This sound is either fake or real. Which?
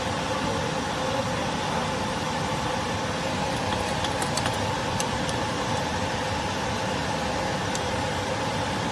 real